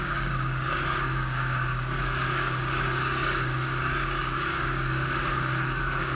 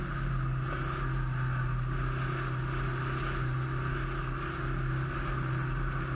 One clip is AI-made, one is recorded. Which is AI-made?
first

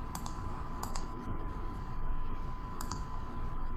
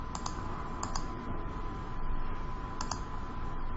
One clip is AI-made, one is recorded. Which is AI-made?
first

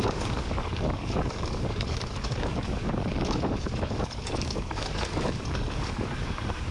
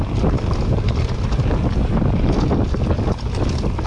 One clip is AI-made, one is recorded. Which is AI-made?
first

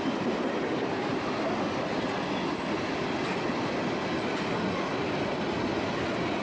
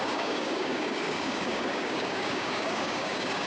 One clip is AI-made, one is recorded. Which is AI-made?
second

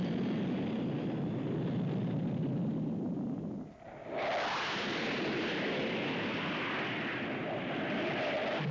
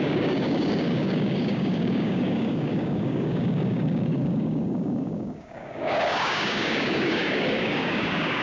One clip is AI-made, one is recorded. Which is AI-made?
second